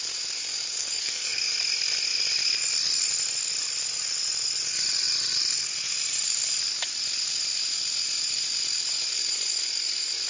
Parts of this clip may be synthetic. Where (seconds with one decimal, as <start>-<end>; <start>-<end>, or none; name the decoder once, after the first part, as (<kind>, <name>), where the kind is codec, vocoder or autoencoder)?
0.8-1.4 (codec, SNAC)